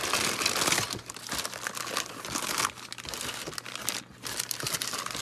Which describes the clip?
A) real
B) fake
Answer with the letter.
A